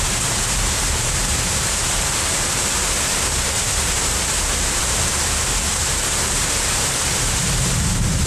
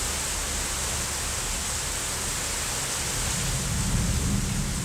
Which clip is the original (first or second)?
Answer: second